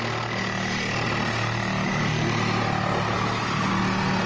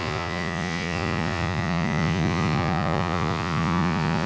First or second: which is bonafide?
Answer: first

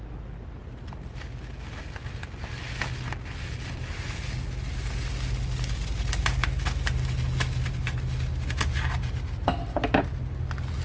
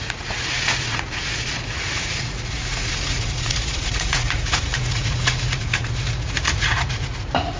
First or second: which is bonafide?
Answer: first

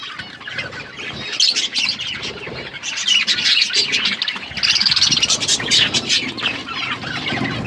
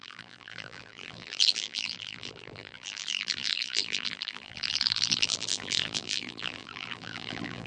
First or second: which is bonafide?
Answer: first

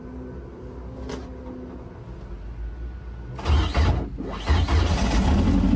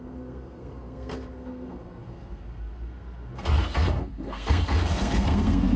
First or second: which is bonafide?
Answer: first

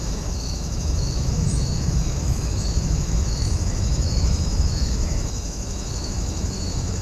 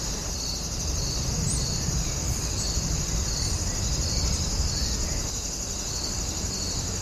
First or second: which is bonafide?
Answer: second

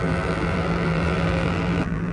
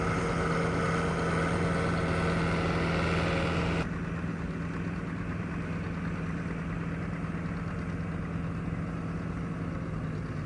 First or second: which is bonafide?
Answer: second